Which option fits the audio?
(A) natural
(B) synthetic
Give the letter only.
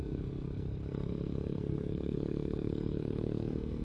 B